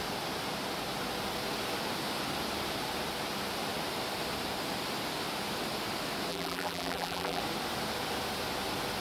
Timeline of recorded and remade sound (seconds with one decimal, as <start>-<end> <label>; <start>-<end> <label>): 0.0-6.3 recorded; 6.3-7.4 remade; 7.4-9.0 recorded